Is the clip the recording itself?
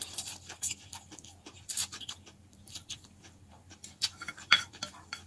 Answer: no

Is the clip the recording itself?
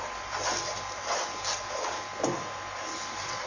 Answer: yes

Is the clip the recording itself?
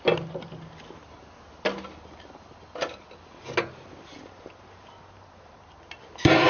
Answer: yes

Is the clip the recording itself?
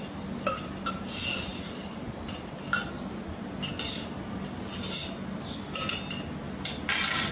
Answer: yes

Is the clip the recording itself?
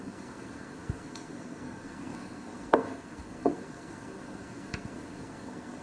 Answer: no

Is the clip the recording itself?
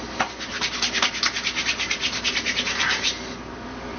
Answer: yes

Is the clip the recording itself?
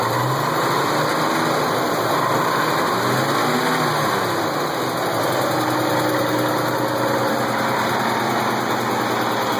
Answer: yes